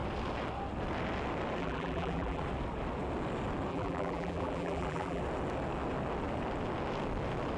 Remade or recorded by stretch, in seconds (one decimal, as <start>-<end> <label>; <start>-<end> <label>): 0.0-1.6 recorded; 1.6-2.4 remade; 2.4-3.7 recorded; 3.7-5.2 remade; 5.2-7.6 recorded